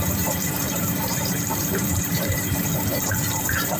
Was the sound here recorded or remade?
remade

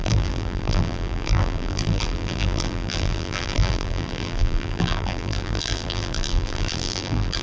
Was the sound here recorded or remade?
remade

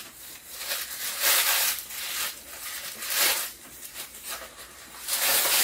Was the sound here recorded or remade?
remade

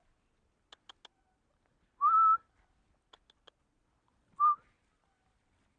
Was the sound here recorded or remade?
recorded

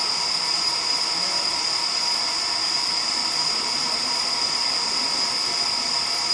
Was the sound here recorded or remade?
remade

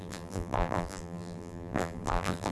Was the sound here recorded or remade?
remade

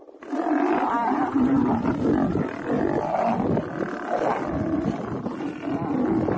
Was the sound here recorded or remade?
recorded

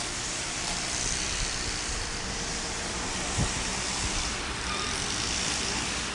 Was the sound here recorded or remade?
remade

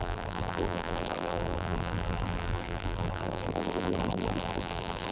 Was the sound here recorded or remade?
remade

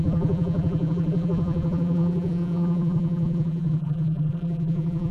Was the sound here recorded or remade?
remade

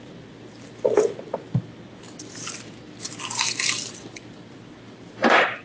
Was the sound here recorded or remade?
recorded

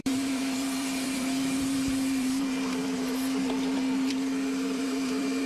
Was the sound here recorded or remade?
remade